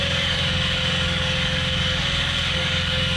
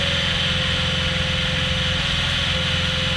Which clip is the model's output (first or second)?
first